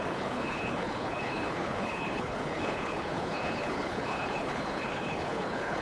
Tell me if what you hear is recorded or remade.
remade